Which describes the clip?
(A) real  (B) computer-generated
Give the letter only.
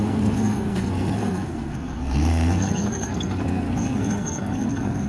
B